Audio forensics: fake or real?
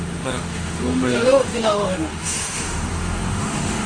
fake